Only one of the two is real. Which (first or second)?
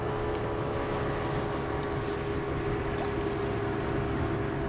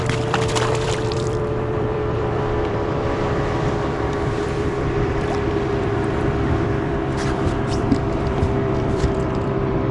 first